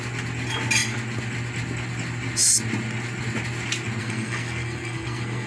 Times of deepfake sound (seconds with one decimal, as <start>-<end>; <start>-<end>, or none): 4.0-5.5